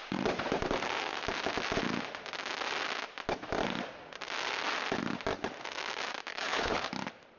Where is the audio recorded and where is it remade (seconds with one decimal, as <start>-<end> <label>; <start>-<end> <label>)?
0.0-6.3 recorded; 6.3-6.9 remade; 6.9-7.4 recorded